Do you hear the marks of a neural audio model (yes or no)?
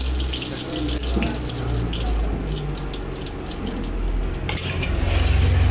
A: no